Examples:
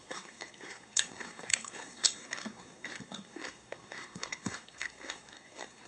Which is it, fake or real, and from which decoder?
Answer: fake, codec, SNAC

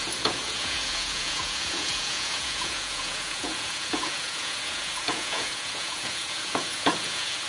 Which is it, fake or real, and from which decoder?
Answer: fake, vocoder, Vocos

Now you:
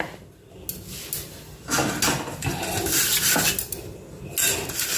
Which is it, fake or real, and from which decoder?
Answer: real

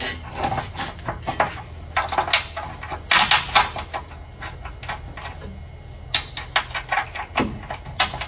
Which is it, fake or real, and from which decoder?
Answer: real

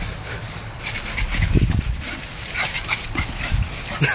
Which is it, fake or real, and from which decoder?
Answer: real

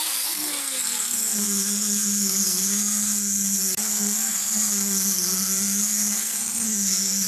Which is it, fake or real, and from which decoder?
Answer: fake, codec, SNAC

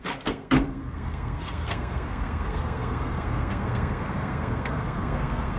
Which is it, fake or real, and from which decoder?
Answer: fake, codec, SNAC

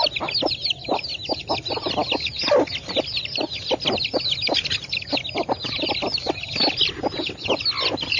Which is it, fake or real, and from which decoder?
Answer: real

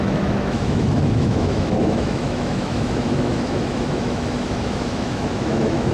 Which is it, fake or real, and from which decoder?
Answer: fake, autoencoder, DAC-VAE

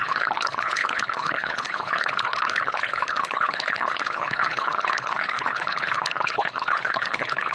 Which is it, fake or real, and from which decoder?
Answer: fake, codec, HILCodec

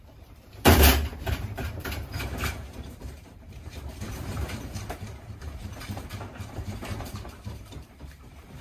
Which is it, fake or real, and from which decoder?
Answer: fake, vocoder, BigVGAN v2